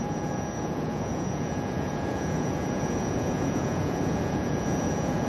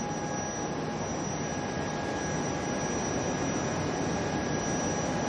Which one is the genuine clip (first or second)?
second